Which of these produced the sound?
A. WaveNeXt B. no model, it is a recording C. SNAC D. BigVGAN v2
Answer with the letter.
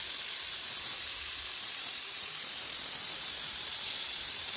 D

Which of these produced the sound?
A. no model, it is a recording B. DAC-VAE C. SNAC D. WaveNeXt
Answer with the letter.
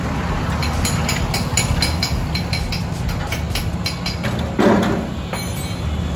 A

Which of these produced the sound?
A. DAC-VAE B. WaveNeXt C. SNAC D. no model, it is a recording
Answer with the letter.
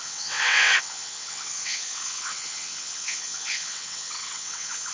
B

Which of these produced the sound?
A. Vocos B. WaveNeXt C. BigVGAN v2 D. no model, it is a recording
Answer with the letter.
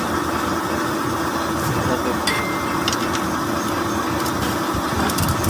D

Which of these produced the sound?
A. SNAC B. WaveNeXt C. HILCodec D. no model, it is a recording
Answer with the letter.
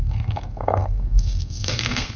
A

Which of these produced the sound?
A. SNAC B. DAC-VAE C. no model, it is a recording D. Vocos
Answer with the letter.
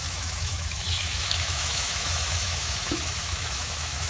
B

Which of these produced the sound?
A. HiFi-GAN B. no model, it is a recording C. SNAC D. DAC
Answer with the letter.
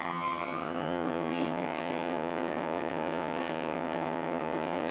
A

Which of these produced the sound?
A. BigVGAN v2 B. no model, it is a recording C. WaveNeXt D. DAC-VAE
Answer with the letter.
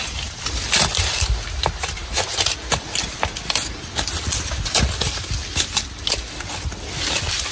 B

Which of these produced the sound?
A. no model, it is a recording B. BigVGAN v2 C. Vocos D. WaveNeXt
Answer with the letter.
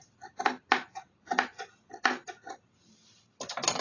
A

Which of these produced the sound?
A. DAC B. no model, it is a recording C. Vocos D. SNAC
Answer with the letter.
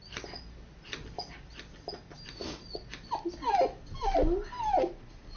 B